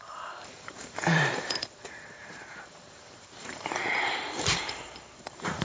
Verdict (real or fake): fake